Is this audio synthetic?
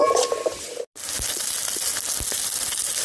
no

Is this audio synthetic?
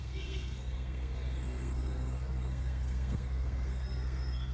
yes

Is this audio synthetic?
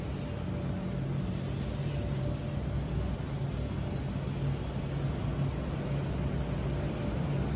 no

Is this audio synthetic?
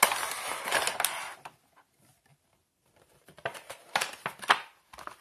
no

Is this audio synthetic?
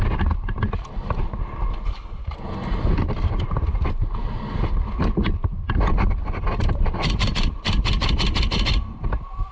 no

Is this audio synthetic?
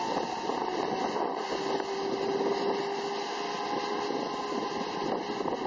no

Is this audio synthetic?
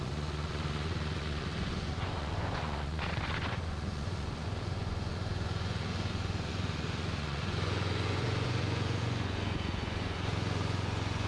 yes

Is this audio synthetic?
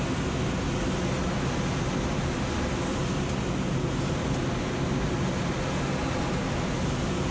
no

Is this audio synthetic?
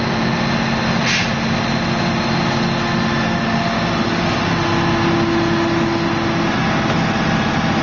no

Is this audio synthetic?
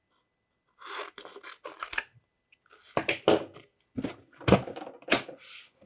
no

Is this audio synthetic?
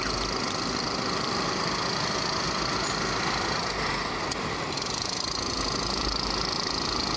no